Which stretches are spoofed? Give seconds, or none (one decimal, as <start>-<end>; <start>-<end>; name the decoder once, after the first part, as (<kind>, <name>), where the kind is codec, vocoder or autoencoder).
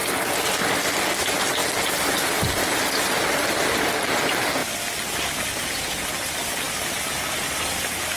none